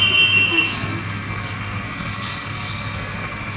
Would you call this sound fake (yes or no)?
yes